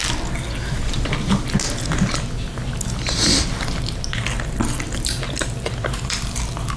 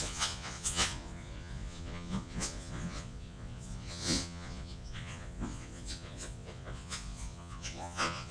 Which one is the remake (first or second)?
second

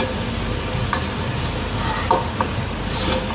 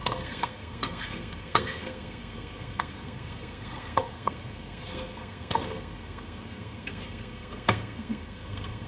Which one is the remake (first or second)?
second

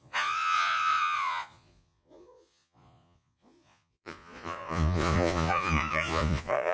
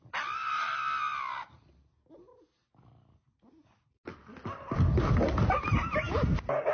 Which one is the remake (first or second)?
first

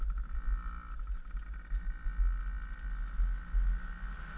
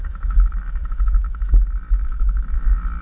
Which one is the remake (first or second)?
second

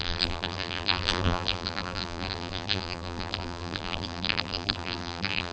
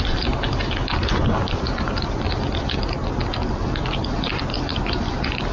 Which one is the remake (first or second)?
first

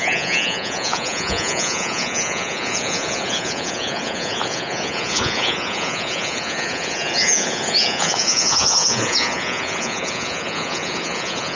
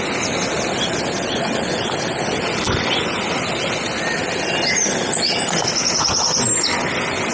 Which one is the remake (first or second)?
first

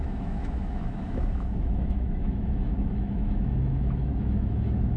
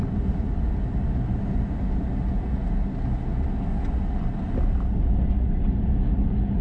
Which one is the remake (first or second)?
first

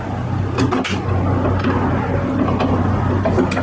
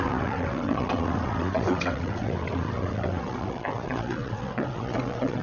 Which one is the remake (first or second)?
second